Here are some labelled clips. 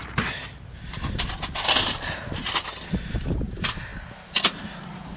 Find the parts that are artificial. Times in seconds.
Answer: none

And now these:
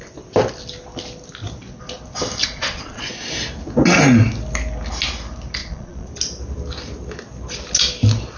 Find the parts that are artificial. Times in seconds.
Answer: 2.4-3.1; 5.6-6.1

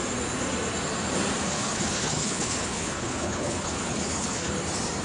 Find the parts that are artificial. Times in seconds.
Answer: 1.5-4.5

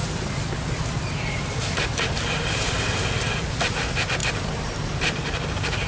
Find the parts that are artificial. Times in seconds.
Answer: 4.2-5.9

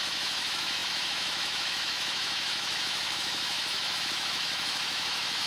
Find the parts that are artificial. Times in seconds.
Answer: 0.0-5.5

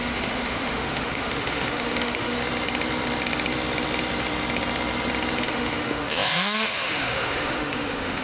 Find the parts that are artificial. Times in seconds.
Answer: 0.0-2.4; 5.4-8.2

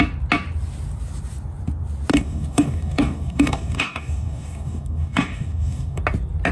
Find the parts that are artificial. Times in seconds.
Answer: 2.1-6.0